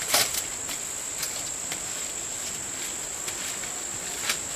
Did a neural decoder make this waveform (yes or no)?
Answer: no